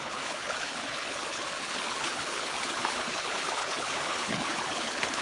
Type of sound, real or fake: fake